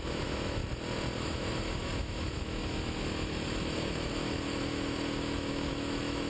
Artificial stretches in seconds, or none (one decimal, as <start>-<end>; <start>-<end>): 0.0-0.6; 1.2-6.3